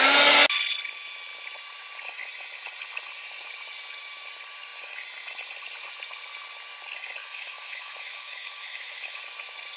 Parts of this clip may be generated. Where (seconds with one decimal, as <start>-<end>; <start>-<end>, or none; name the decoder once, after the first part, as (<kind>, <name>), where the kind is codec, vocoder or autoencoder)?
7.2-9.2 (autoencoder, DAC-VAE)